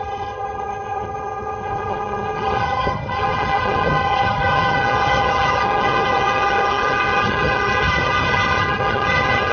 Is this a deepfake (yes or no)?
yes